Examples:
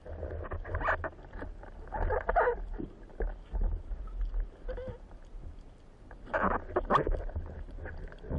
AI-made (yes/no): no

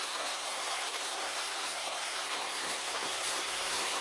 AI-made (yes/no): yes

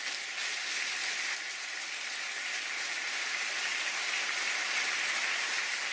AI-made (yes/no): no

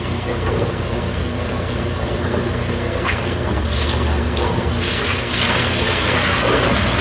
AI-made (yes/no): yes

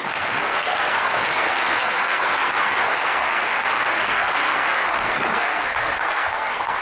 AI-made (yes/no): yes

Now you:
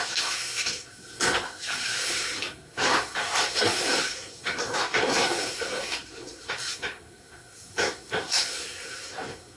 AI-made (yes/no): yes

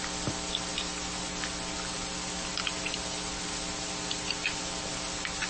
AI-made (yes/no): no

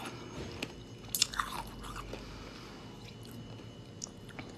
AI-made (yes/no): no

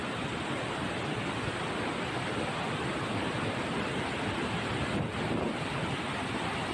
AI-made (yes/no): no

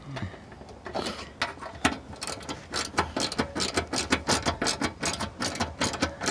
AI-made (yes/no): no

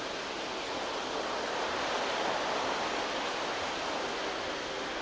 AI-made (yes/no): no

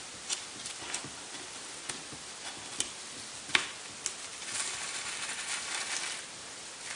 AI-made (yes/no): no